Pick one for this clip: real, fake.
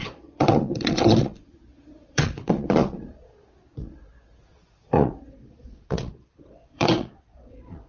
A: fake